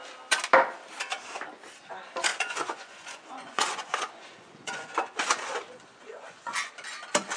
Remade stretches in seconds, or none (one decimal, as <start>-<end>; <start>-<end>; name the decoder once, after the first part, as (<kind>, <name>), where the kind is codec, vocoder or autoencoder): 2.3-6.7 (vocoder, Vocos)